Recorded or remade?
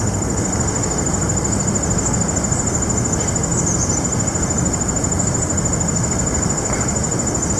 recorded